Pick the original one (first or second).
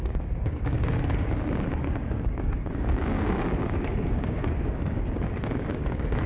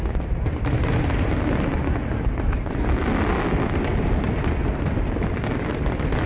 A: second